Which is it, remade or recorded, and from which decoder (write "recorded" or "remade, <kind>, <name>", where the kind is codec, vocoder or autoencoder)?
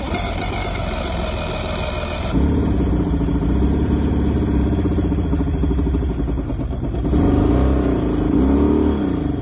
recorded